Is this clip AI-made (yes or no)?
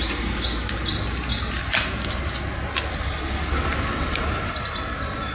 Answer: no